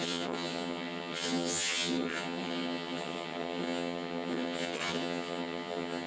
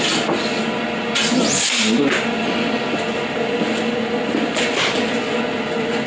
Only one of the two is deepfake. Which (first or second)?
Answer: first